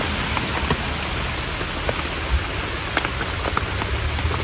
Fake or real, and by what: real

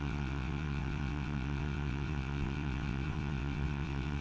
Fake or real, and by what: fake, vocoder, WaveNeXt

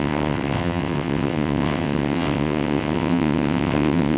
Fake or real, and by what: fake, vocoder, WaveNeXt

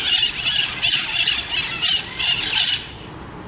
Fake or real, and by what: real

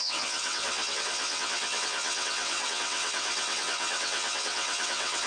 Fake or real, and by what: fake, vocoder, WaveNeXt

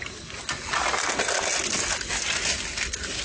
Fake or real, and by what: real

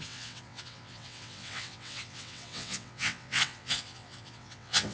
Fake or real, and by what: fake, vocoder, WaveNeXt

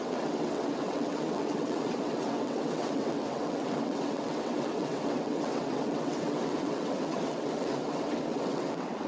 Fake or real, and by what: fake, vocoder, WaveNeXt